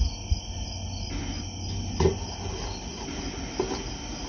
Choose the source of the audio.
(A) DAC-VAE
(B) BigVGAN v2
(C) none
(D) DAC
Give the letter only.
C